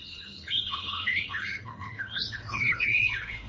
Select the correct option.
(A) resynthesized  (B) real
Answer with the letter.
A